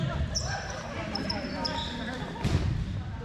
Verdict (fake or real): fake